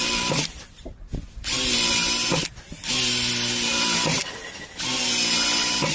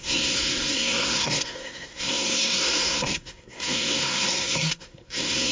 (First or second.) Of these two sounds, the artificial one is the second